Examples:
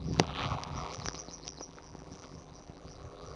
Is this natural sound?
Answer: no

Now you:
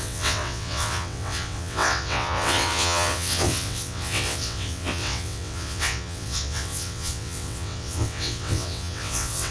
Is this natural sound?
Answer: no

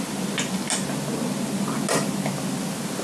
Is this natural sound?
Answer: yes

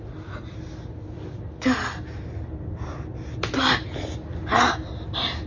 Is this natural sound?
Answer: yes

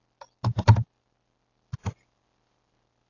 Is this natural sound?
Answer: yes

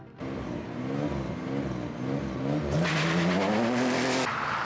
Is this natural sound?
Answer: yes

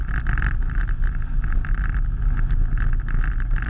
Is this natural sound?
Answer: yes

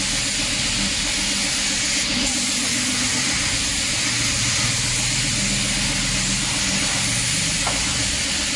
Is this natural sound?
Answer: yes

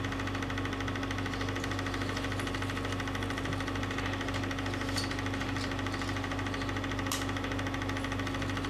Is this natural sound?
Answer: yes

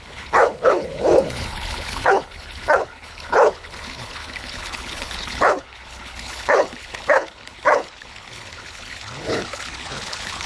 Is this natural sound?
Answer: no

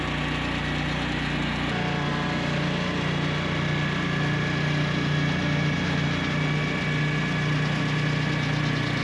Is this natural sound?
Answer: yes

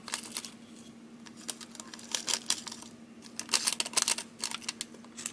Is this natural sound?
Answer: yes